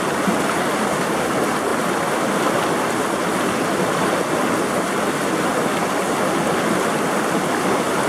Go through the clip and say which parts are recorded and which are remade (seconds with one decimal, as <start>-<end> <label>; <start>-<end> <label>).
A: 0.0-8.1 recorded